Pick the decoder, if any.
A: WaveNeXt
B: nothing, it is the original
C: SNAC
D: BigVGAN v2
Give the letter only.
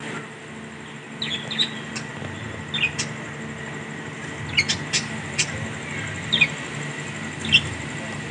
B